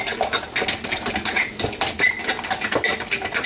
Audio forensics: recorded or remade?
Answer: recorded